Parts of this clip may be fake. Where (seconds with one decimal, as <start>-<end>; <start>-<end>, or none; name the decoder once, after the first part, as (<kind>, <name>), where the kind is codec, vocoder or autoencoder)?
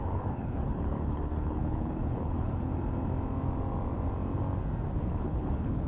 0.0-2.7 (codec, HILCodec); 5.0-5.9